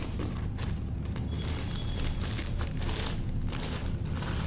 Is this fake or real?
fake